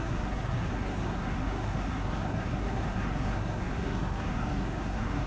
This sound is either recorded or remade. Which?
remade